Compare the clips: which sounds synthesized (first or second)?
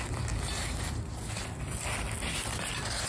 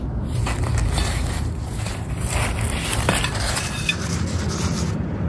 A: second